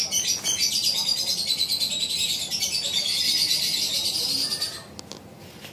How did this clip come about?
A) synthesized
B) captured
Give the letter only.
B